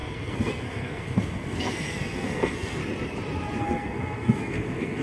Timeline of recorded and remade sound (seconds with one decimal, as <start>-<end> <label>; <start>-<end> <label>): 0.0-2.8 remade; 2.8-3.6 recorded; 3.6-5.0 remade